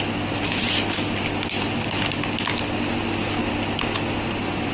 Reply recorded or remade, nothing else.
recorded